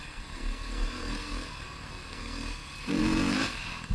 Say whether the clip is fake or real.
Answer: fake